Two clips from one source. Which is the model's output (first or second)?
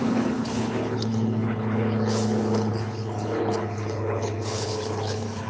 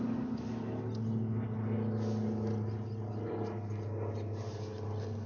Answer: first